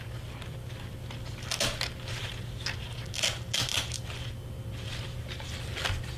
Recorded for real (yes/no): yes